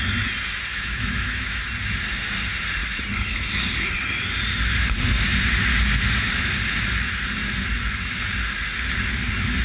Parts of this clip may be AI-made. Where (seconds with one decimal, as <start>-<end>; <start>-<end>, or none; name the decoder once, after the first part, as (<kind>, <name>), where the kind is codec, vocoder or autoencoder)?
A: 0.7-1.6 (autoencoder, DAC-VAE)